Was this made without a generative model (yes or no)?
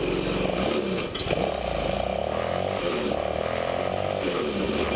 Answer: yes